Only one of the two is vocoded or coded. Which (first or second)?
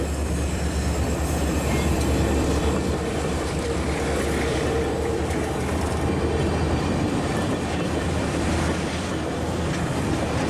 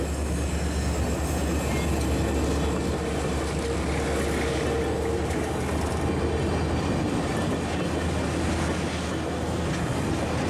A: first